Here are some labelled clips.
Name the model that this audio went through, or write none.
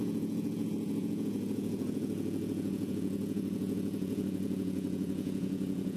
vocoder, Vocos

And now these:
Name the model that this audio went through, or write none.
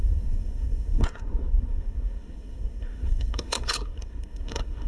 codec, SNAC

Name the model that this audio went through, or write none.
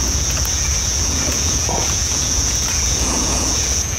vocoder, Vocos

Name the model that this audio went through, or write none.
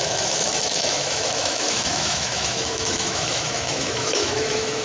autoencoder, DAC-VAE